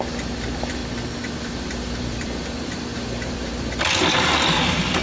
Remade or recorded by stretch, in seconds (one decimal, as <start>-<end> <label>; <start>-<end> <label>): 0.0-0.8 remade; 0.8-1.4 recorded; 1.4-5.0 remade